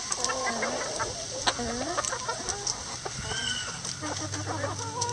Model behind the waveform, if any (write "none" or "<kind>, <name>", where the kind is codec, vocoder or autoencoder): none